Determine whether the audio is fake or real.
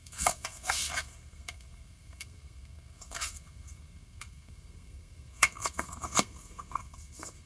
fake